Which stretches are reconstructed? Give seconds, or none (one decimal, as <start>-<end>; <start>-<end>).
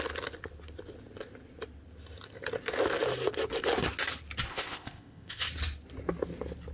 4.5-5.4